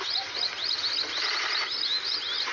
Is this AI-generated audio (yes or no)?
no